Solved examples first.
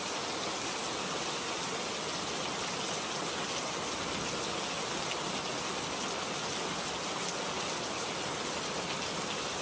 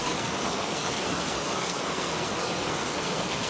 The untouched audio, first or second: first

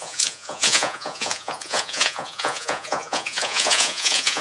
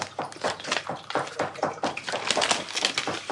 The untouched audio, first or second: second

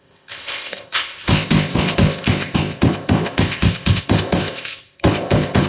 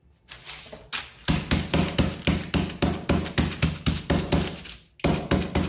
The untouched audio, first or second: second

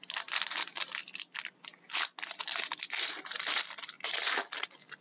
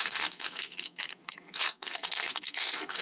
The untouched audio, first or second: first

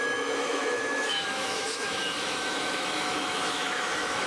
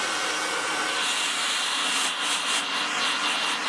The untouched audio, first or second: second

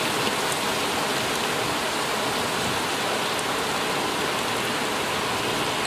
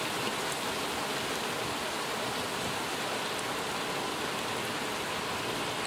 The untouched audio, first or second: first